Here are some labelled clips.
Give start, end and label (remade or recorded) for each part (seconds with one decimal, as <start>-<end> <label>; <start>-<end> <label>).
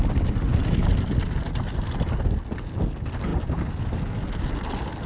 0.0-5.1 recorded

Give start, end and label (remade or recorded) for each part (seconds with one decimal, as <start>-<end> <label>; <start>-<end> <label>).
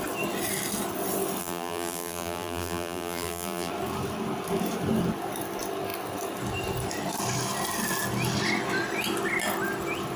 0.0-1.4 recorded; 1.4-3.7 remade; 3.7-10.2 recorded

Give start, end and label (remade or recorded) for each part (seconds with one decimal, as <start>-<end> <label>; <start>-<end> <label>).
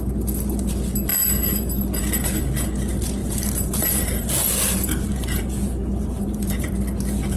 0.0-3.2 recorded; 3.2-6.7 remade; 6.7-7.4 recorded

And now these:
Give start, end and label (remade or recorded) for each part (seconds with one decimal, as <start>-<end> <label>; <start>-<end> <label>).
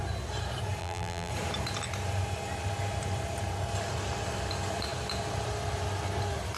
0.0-0.8 recorded; 0.8-1.3 remade; 1.3-6.6 recorded